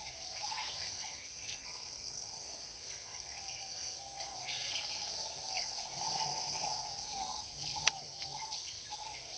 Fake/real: fake